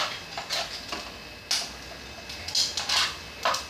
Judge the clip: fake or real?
real